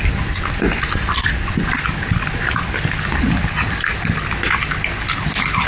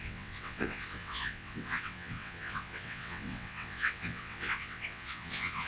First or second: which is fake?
second